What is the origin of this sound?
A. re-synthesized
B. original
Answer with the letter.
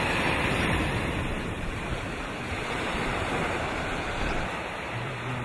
A